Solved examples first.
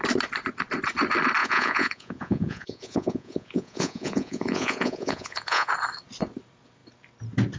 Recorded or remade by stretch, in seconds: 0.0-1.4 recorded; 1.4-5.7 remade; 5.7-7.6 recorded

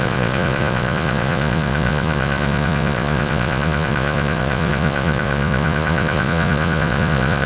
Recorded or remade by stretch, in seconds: 0.0-7.5 remade